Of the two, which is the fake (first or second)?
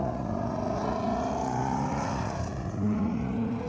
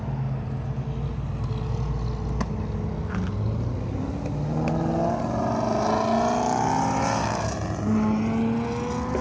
first